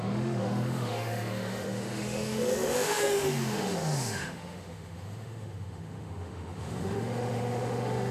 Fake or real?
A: fake